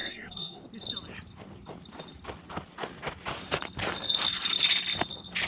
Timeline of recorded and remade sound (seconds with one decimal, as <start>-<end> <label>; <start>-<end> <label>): 0.0-0.6 remade; 0.6-5.5 recorded